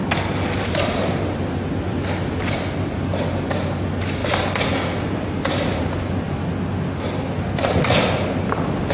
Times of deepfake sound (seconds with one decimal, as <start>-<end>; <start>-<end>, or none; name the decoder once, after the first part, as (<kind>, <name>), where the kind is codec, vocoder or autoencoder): none